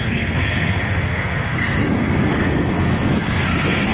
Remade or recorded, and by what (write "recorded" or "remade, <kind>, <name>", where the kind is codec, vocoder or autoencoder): remade, codec, SNAC